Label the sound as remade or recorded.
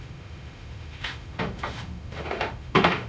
remade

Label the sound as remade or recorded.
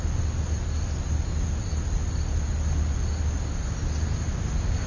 recorded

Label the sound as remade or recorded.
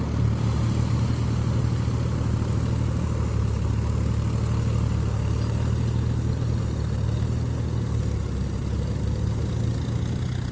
recorded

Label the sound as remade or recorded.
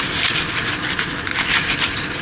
recorded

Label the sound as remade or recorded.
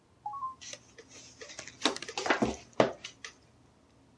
recorded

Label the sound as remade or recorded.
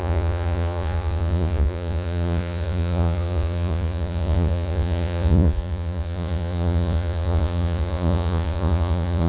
remade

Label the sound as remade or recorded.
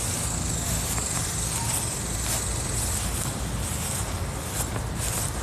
recorded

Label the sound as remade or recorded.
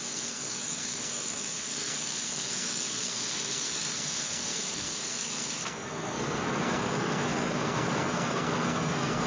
remade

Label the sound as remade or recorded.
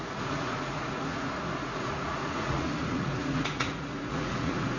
remade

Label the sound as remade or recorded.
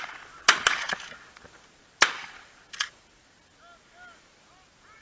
recorded